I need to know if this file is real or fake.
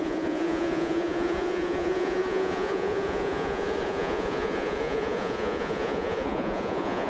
fake